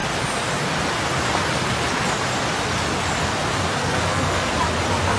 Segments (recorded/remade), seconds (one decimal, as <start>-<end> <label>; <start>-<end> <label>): 0.0-3.8 recorded; 3.8-4.5 remade; 4.5-5.2 recorded